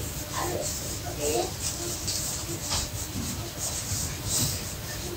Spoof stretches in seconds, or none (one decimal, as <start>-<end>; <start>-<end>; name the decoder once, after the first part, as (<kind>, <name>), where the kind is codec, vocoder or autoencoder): 1.3-4.2 (vocoder, BigVGAN v2)